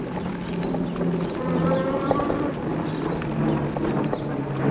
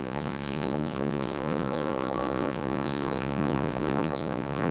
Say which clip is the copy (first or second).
second